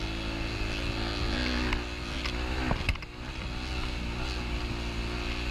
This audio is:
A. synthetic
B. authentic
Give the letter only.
B